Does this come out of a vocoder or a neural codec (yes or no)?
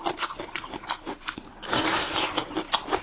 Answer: no